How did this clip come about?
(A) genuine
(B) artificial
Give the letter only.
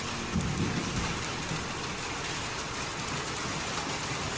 A